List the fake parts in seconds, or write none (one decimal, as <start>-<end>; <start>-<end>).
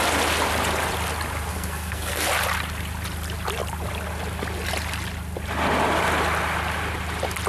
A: 1.5-2.3